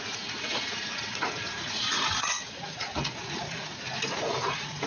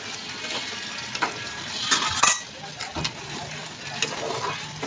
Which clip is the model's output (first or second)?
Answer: first